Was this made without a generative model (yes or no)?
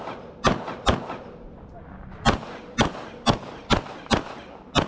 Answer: yes